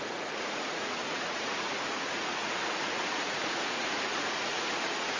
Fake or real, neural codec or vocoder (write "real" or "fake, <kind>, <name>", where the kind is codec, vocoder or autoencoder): fake, vocoder, Vocos